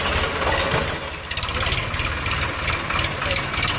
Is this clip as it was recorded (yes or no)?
yes